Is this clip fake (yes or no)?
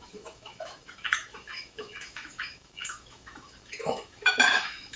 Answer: yes